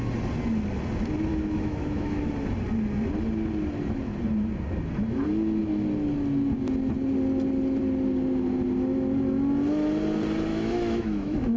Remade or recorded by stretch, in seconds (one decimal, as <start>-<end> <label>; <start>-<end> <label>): 0.0-1.3 recorded; 1.3-2.3 remade; 2.3-10.5 recorded; 10.5-11.6 remade